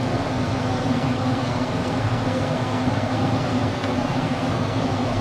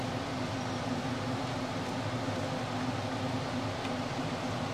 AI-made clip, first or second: first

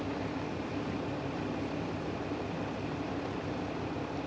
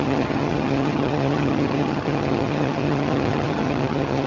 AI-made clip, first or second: second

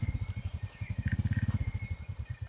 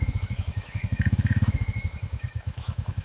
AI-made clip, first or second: second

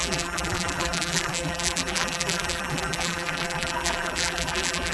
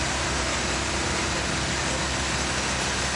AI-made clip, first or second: first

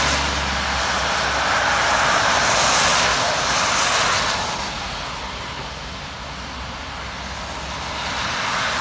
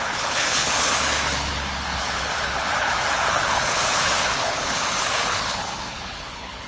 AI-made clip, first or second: second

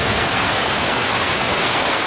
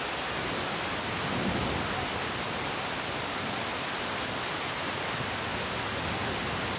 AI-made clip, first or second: first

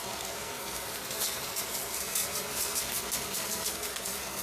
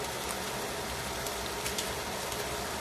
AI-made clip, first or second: first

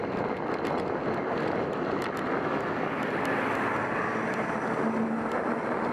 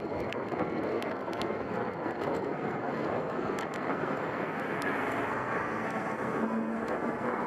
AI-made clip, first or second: second